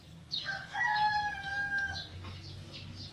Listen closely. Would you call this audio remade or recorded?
remade